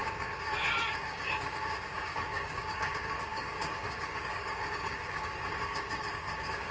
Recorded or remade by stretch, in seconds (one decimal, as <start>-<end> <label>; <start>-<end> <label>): 0.0-6.7 remade